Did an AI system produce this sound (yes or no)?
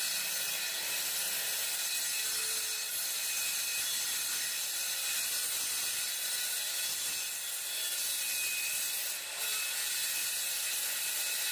no